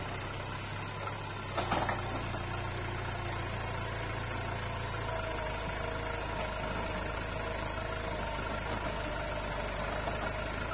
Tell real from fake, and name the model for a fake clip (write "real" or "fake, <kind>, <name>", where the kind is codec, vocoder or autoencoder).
real